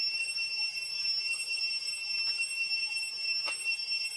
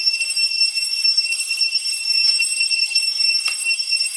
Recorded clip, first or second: first